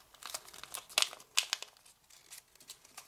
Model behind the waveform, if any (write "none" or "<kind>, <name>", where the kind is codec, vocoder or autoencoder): none